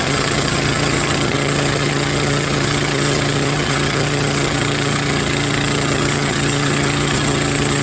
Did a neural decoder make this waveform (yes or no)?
yes